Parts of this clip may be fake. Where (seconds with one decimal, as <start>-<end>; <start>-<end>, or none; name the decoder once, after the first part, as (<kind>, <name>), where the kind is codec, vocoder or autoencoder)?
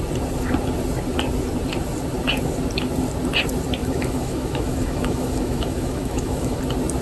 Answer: 3.8-6.6 (autoencoder, DAC-VAE)